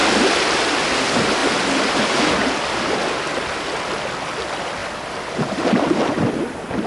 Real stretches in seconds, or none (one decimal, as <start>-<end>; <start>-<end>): 0.0-6.9